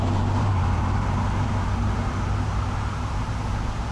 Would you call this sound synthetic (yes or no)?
yes